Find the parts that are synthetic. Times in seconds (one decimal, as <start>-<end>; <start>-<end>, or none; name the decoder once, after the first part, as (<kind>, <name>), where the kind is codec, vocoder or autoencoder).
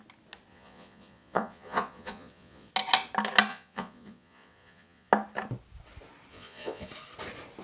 0.5-2.7 (vocoder, Vocos); 3.5-5.1; 6.3-6.9